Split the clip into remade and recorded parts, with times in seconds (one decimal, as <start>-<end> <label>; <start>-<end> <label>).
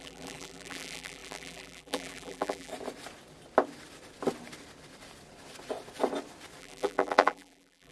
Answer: 0.0-2.7 remade; 2.7-6.6 recorded; 6.6-7.9 remade